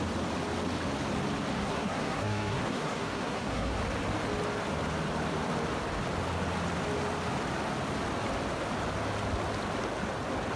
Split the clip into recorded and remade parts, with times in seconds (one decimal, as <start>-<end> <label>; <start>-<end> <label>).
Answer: 0.0-1.6 recorded; 1.6-3.8 remade; 3.8-10.6 recorded